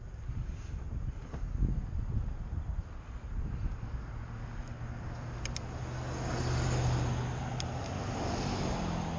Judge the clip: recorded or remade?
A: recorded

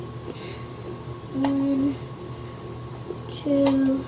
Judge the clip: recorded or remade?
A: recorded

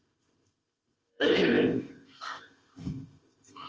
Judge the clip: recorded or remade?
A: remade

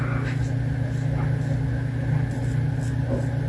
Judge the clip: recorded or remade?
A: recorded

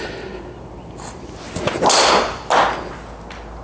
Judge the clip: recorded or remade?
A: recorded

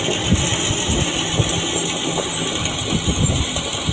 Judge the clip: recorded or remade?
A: recorded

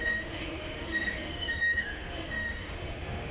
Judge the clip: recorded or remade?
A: remade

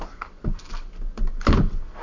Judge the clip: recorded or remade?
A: recorded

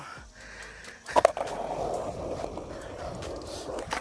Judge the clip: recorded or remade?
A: recorded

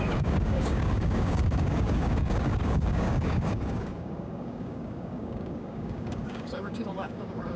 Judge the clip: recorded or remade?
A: remade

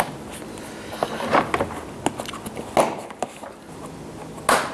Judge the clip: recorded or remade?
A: recorded